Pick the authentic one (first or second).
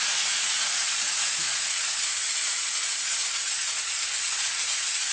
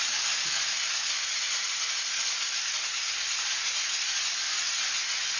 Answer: second